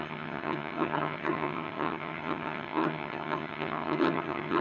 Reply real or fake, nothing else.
fake